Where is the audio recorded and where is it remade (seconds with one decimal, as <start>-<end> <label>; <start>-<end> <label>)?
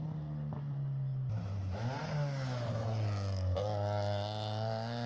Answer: 0.0-5.1 recorded